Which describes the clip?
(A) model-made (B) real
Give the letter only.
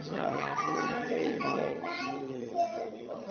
A